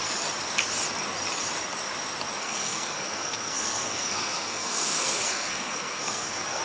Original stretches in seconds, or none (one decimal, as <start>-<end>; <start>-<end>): 0.0-2.4